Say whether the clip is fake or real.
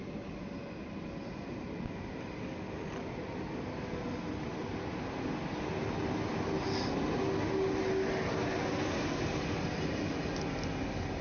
real